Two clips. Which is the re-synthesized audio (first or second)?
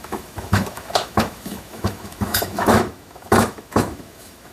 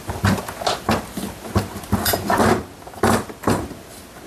first